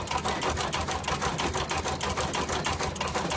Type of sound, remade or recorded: recorded